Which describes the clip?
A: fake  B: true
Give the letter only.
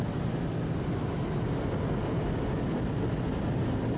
B